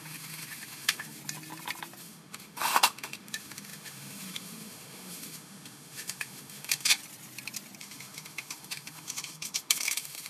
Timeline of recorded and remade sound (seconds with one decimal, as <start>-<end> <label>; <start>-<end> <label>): 0.0-1.2 remade; 1.2-2.0 recorded; 2.0-7.0 remade; 7.0-7.8 recorded; 7.8-10.3 remade